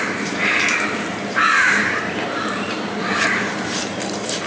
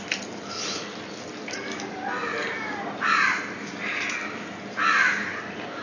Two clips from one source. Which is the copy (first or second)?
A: first